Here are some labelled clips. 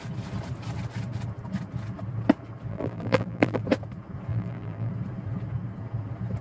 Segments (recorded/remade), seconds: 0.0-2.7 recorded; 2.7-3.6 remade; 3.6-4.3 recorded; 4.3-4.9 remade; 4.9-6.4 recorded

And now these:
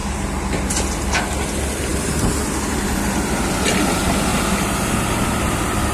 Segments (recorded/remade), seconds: 0.0-5.9 recorded

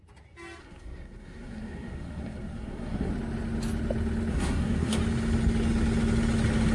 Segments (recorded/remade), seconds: 0.0-0.6 recorded; 0.6-3.1 remade; 3.1-4.3 recorded; 4.3-5.0 remade; 5.0-6.7 recorded

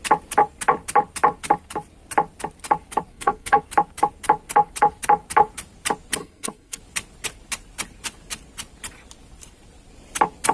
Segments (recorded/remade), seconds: 0.0-3.1 recorded; 3.1-3.6 remade; 3.6-6.2 recorded; 6.2-6.8 remade; 6.8-10.5 recorded

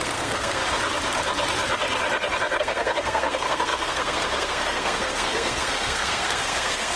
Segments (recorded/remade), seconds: 0.0-0.6 remade; 0.6-2.6 recorded; 2.6-7.0 remade

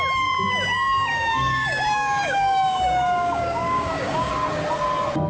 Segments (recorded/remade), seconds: 0.0-1.1 recorded; 1.1-4.3 remade; 4.3-5.3 recorded

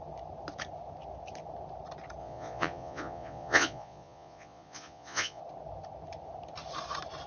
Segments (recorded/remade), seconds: 0.0-2.2 recorded; 2.2-5.4 remade; 5.4-7.3 recorded